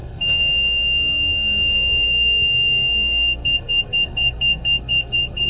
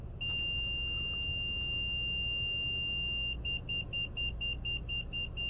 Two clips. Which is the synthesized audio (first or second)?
first